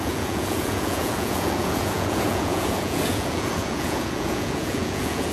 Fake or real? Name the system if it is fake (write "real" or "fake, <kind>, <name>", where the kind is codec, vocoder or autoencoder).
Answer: fake, vocoder, Vocos